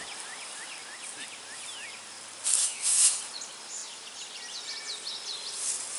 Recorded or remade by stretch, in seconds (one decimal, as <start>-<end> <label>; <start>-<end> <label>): 0.0-2.6 recorded; 2.6-3.2 remade; 3.2-6.0 recorded